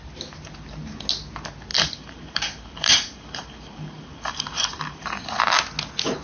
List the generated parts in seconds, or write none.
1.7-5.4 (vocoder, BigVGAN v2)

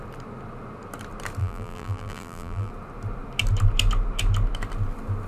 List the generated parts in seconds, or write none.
1.4-2.7 (vocoder, BigVGAN v2)

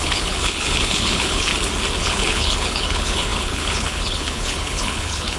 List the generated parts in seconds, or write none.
0.0-1.5 (codec, HILCodec); 2.0-5.4

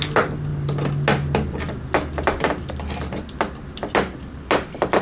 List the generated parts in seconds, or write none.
none

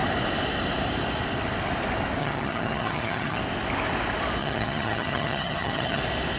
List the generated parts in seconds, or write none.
2.2-3.4 (vocoder, HiFi-GAN); 4.4-6.0

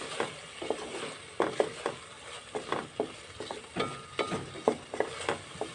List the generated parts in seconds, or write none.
none

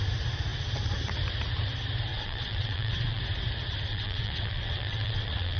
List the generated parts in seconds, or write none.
2.1-3.2 (vocoder, WaveNeXt); 3.9-5.6

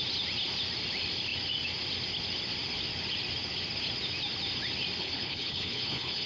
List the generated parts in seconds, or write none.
5.0-6.3 (codec, HILCodec)